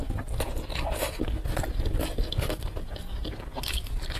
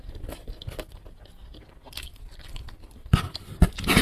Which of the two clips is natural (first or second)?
first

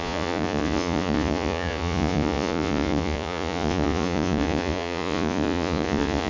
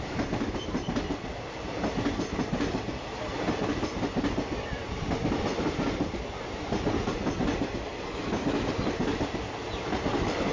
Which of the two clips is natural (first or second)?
second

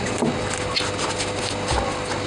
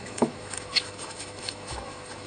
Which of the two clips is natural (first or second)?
first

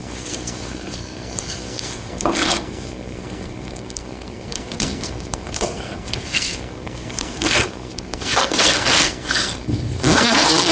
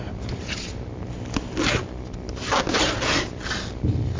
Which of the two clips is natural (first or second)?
second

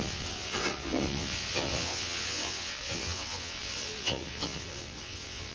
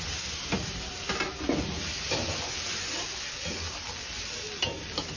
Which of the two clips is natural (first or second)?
second